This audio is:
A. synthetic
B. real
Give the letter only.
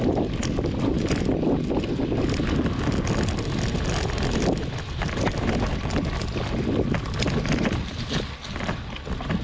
B